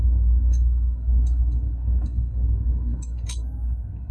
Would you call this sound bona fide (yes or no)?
no